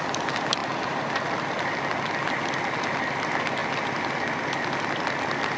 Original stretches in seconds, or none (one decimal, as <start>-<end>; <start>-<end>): 0.0-5.6